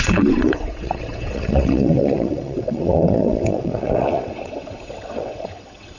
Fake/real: fake